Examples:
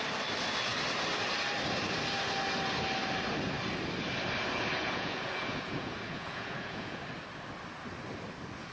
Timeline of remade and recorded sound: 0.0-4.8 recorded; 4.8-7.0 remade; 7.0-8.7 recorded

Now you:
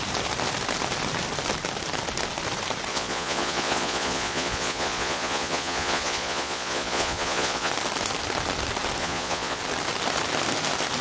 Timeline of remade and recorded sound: 0.0-2.9 recorded; 2.9-7.7 remade; 7.7-9.0 recorded; 9.0-9.6 remade; 9.6-11.0 recorded

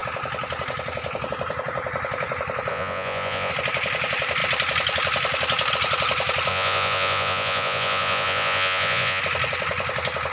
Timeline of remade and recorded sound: 0.0-2.7 recorded; 2.7-3.5 remade; 3.5-6.5 recorded; 6.5-9.2 remade; 9.2-10.3 recorded

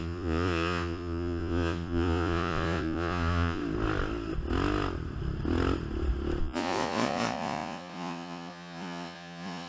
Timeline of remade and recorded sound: 0.0-3.6 remade; 3.6-6.4 recorded; 6.4-9.7 remade

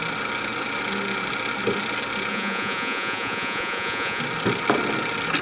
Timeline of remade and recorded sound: 0.0-2.3 recorded; 2.3-4.2 remade; 4.2-5.4 recorded

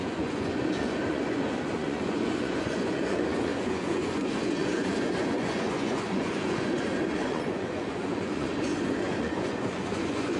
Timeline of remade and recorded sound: 0.0-10.4 remade

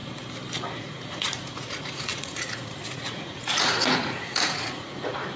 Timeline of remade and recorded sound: 0.0-0.8 recorded; 0.8-5.4 remade